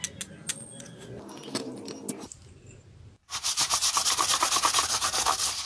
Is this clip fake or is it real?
real